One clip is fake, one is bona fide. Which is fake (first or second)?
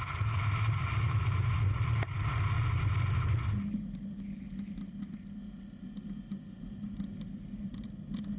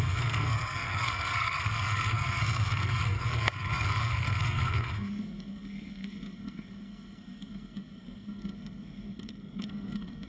second